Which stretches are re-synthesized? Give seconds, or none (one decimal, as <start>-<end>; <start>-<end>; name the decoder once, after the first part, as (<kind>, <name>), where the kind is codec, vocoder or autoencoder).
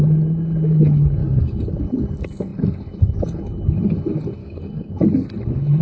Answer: 1.2-1.8 (codec, DAC); 4.4-4.9